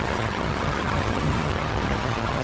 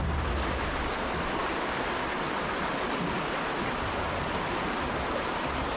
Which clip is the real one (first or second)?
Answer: second